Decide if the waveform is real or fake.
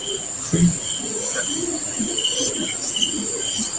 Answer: fake